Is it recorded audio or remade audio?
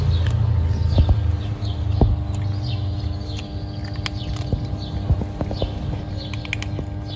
recorded